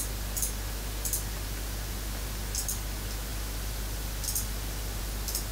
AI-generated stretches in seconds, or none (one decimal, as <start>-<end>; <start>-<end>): 3.3-5.0